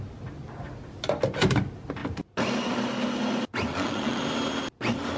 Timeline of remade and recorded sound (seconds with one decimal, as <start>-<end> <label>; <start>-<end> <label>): 0.0-3.7 recorded; 3.7-4.2 remade; 4.2-5.2 recorded